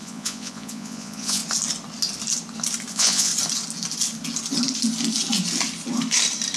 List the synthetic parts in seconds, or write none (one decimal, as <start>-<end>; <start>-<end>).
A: 0.0-1.4; 2.9-3.3